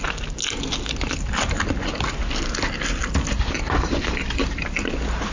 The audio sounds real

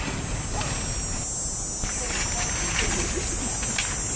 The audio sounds real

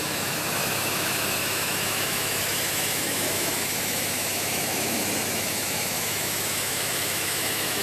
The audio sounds fake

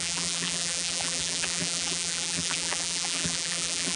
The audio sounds fake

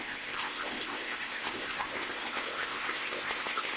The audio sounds fake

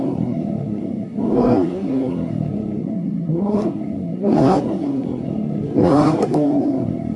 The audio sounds fake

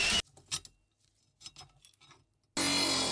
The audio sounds real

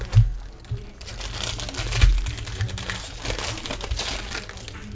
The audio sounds real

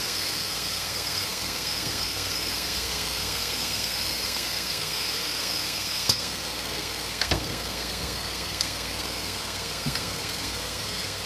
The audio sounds fake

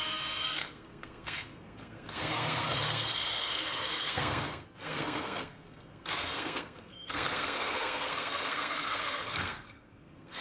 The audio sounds fake